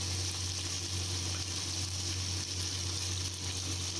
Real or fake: real